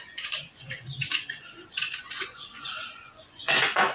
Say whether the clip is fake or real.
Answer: fake